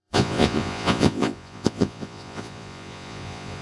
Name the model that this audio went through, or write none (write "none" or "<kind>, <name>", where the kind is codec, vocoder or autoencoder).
vocoder, Vocos